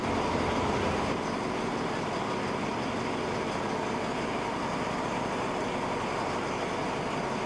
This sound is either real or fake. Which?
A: real